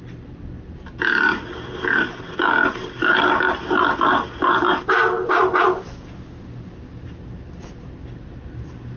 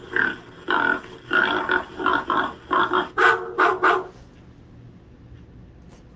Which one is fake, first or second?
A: first